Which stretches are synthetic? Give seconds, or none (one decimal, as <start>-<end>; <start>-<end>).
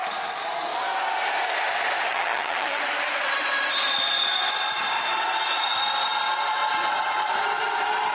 2.1-2.8